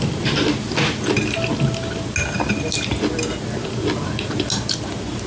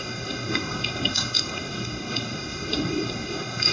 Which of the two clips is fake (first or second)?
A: second